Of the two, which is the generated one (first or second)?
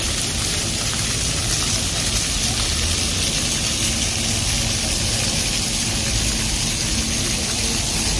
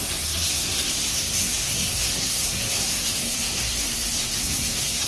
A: second